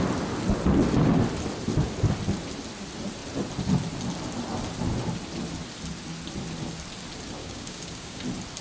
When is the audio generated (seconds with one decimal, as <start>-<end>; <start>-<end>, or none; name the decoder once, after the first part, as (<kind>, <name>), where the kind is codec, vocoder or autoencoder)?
7.4-8.2 (codec, DAC)